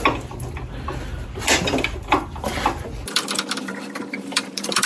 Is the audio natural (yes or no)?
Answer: no